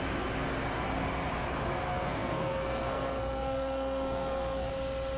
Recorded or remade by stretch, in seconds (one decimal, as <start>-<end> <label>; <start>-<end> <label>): 0.0-1.9 recorded; 1.9-4.7 remade; 4.7-5.2 recorded